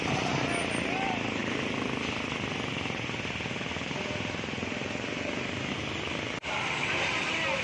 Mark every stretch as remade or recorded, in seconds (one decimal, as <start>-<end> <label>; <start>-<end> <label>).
0.0-7.6 recorded